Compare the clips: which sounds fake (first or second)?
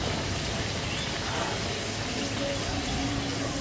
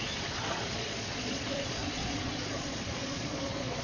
second